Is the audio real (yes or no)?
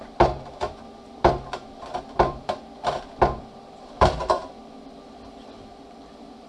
no